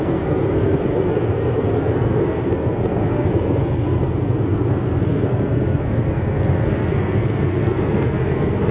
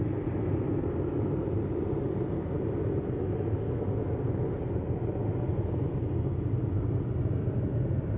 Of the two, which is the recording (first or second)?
second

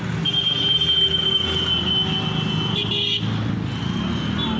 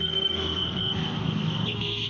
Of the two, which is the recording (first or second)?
first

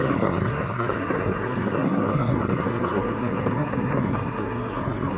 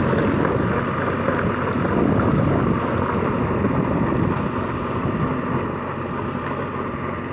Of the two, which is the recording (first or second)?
second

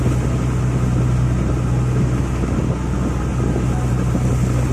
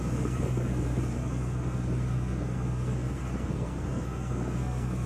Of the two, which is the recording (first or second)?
first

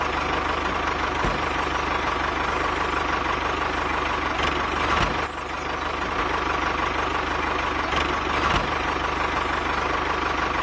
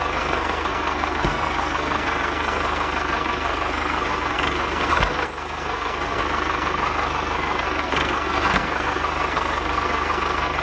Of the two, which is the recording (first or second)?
first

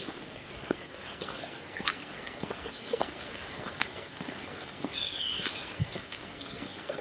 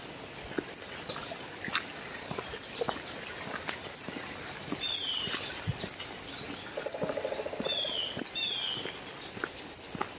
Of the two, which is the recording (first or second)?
second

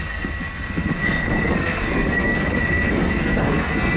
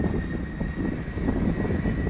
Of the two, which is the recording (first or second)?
second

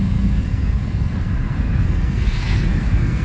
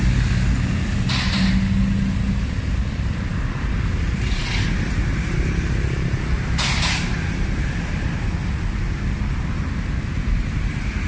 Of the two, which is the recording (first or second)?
second